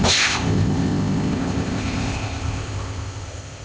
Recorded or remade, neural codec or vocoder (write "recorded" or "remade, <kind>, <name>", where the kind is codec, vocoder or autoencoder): remade, codec, ZipCodec